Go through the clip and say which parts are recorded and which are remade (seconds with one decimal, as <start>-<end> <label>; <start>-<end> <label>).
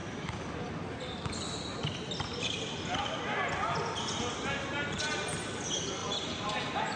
0.0-0.5 remade; 0.5-6.0 recorded; 6.0-7.0 remade